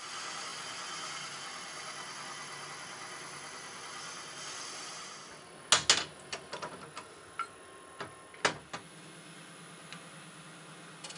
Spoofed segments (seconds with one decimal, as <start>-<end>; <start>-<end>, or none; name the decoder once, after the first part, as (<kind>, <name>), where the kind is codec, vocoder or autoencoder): none